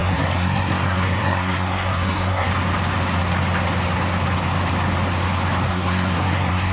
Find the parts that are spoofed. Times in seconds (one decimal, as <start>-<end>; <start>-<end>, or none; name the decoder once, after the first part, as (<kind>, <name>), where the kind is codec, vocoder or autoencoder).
0.0-2.5 (codec, SNAC); 5.7-6.7